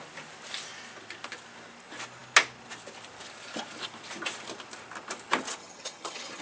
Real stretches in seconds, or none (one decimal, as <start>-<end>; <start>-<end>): 0.0-5.6